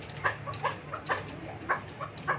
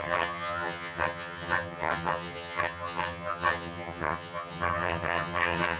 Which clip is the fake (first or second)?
second